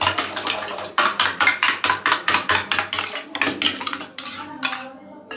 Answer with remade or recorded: recorded